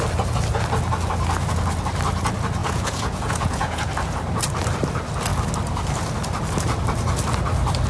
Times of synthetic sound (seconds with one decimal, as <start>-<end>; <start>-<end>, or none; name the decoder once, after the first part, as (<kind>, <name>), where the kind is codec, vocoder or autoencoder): 2.6-3.8 (vocoder, Vocos)